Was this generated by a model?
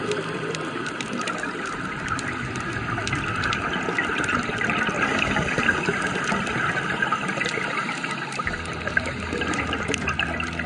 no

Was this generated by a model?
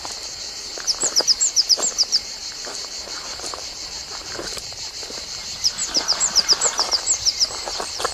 yes